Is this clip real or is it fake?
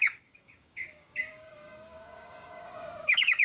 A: fake